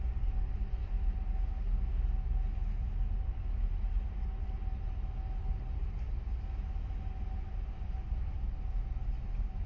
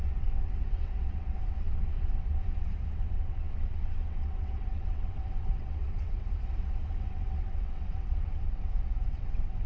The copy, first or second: second